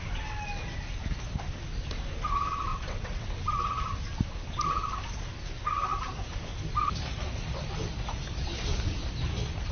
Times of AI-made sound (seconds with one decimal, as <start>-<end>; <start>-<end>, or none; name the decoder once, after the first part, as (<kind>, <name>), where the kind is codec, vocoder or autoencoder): 2.7-3.4 (vocoder, WaveNeXt)